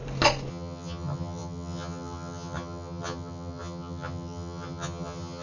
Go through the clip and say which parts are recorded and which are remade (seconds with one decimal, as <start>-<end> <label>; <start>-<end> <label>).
0.0-0.5 recorded; 0.5-5.4 remade